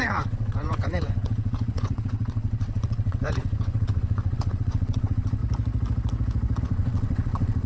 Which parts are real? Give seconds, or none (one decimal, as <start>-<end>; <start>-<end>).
5.4-6.6